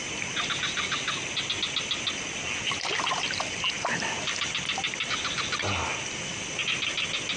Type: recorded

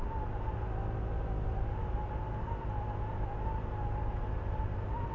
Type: recorded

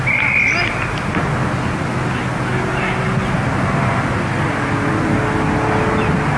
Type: recorded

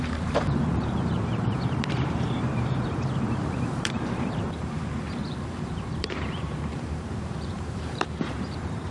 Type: remade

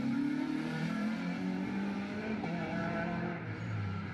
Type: remade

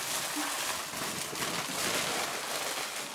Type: recorded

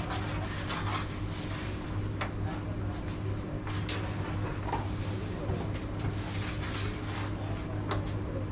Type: recorded